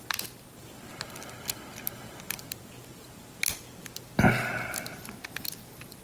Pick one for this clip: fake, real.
real